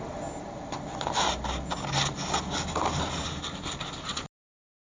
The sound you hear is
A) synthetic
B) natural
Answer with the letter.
B